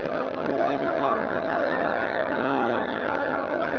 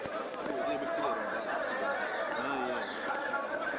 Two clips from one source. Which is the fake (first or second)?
first